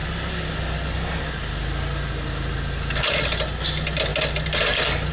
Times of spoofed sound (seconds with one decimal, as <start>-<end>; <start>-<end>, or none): none